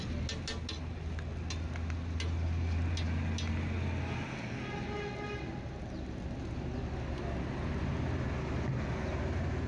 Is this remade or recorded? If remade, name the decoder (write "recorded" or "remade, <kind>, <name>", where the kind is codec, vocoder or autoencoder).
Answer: recorded